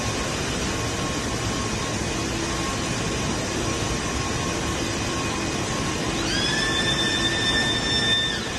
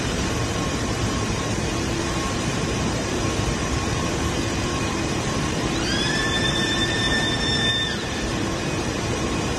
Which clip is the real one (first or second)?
first